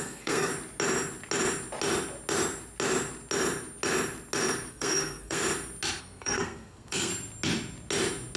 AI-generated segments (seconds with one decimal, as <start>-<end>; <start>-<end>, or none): 0.0-0.5; 4.7-5.4; 6.0-7.1